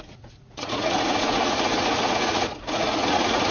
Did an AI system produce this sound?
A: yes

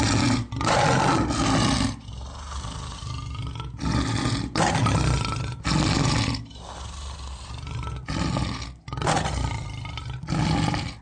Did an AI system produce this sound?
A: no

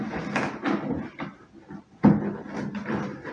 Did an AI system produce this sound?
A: no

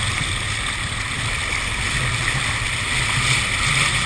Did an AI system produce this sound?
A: no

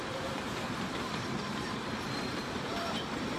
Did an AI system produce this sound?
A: yes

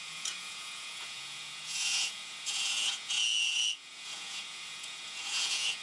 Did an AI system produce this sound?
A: yes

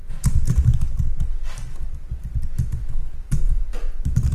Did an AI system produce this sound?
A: no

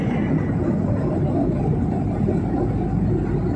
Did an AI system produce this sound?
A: no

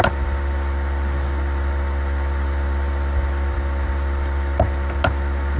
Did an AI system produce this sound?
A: no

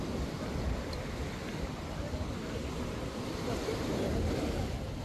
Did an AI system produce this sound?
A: no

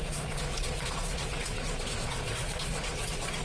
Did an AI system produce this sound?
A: yes